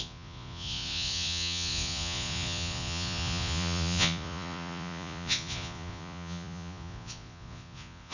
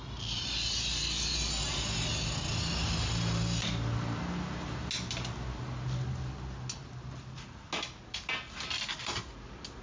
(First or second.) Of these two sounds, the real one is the second